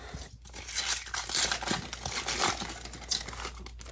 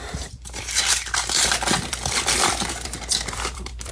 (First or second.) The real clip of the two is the first